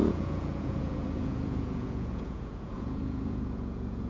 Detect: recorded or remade remade